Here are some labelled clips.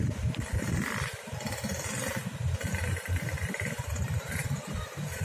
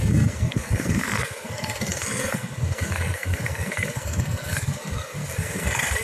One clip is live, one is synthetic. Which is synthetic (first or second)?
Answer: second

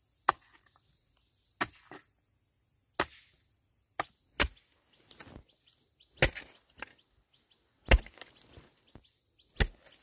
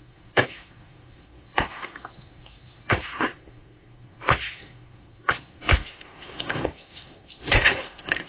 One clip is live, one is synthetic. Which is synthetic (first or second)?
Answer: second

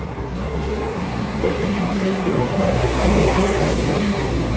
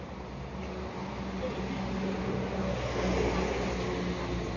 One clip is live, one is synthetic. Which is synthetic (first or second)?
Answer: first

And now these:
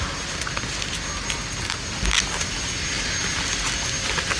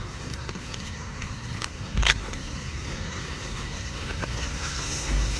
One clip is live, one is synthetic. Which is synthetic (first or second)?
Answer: second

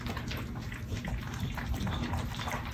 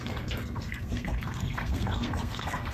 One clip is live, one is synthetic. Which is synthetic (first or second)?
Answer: second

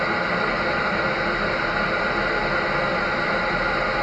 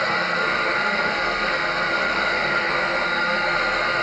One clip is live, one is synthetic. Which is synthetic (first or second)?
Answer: second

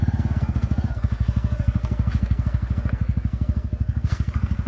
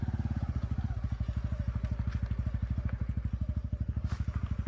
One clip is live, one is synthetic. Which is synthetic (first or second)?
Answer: first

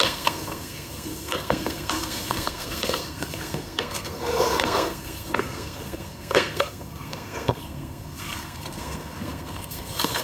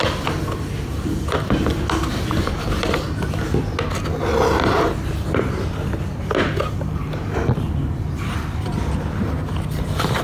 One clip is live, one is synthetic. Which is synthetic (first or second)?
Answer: first